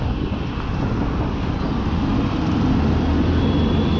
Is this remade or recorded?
recorded